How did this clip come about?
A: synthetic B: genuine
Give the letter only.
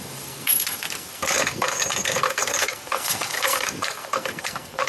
A